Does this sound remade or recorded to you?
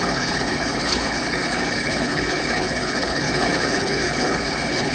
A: remade